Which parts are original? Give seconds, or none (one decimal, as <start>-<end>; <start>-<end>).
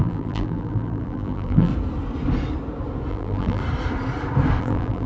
1.7-3.1; 3.6-4.6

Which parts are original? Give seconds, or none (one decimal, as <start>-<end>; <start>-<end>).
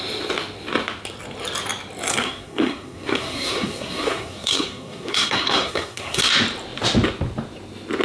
0.0-2.1; 6.3-8.0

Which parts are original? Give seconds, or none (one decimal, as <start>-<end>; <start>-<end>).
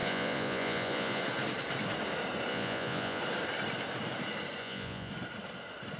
1.2-2.5; 3.2-4.6; 5.1-6.0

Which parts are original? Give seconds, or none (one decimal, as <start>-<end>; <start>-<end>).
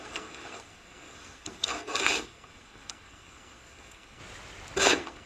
4.2-4.8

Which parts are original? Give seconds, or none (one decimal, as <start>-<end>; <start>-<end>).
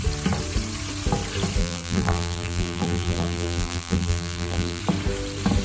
0.0-1.6; 4.8-5.6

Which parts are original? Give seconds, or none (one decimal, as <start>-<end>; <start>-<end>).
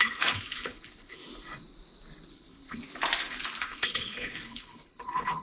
1.2-2.3; 2.8-3.6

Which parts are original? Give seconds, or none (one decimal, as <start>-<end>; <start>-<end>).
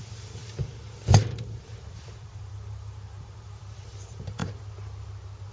4.4-5.5